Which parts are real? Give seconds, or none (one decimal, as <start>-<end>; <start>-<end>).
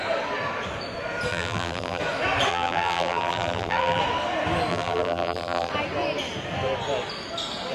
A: 0.0-1.3; 2.0-2.5; 4.0-4.7; 5.7-7.7